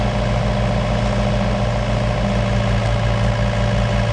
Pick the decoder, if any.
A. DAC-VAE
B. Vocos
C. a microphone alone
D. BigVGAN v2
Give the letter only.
C